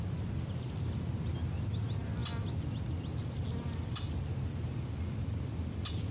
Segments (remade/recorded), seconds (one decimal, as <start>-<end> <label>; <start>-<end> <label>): 0.0-6.1 recorded